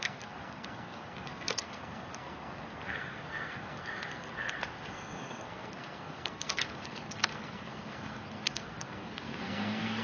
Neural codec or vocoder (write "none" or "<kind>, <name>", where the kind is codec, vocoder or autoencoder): codec, SNAC